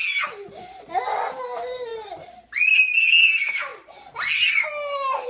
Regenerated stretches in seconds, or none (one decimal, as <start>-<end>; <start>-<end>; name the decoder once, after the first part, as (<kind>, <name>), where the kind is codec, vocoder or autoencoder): none